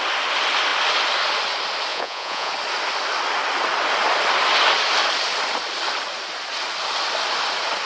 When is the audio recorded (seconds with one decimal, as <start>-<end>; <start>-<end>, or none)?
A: 0.0-1.9; 2.5-7.9

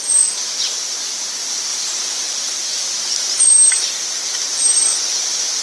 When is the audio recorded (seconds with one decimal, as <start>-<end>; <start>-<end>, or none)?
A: 0.0-1.7; 3.4-5.6